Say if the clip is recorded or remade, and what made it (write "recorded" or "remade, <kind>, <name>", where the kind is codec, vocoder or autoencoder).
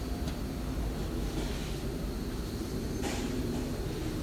recorded